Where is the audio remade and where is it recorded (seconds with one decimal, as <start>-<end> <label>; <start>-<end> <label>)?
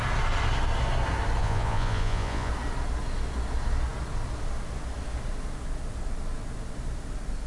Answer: 0.0-1.4 recorded; 1.4-2.5 remade; 2.5-7.5 recorded